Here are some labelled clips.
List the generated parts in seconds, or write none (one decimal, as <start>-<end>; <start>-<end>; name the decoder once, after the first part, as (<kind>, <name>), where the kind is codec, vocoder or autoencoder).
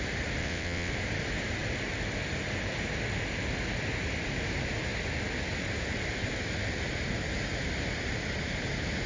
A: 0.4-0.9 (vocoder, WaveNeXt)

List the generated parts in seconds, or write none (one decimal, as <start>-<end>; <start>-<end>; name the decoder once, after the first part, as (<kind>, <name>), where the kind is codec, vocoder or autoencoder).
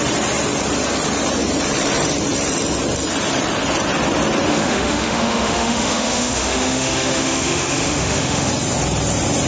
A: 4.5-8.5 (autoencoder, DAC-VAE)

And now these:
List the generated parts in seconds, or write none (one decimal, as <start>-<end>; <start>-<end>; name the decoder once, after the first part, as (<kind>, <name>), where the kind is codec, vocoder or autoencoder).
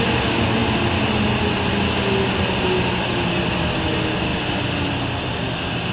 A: none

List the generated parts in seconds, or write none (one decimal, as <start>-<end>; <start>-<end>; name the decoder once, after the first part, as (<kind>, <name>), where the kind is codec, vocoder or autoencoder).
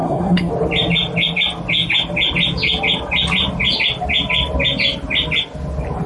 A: 0.0-0.5 (codec, SNAC)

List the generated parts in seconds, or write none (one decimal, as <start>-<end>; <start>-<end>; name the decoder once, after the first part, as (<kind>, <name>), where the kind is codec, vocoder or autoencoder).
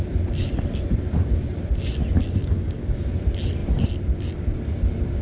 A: 2.4-3.0 (codec, DAC)